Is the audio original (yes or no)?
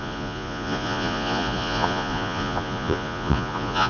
no